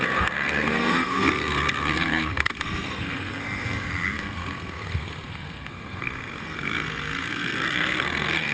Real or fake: fake